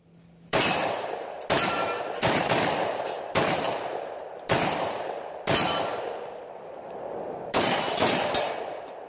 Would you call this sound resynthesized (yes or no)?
yes